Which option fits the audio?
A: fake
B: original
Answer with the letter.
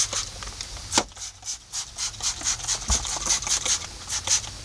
B